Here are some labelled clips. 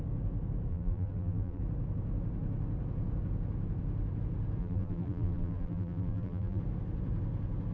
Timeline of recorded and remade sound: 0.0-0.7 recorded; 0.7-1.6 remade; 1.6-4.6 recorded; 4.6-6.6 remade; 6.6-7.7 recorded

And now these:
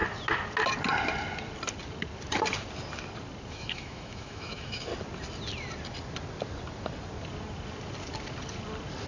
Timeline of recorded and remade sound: 0.0-3.5 recorded; 3.5-4.9 remade; 4.9-9.1 recorded